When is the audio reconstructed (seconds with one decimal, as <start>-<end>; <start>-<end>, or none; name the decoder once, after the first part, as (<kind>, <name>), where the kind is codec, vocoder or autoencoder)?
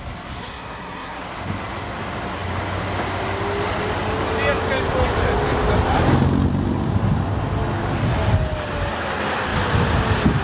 0.4-1.2 (codec, SNAC)